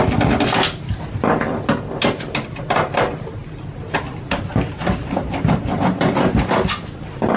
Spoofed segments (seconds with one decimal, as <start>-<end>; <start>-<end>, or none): none

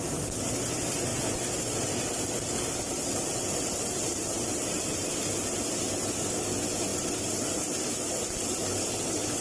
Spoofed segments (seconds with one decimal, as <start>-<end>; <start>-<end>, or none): 1.1-5.4; 6.9-8.4

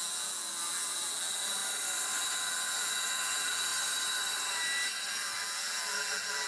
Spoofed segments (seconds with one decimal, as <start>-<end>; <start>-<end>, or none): 0.0-1.6; 2.2-3.7; 5.1-6.5

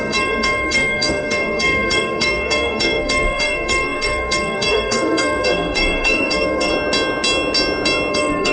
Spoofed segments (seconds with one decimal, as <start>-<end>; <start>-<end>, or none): 0.0-6.7; 8.1-8.5

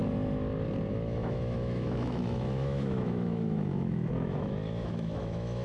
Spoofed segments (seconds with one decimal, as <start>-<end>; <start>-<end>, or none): 0.9-5.6

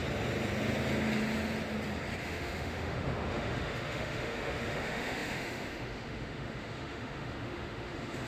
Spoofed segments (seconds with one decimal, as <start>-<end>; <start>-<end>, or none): 2.2-8.3

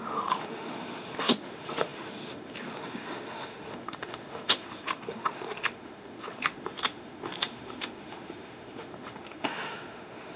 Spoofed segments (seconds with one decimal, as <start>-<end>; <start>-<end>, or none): 0.0-10.4

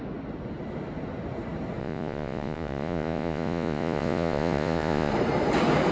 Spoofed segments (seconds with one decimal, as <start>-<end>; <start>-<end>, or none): 1.8-5.1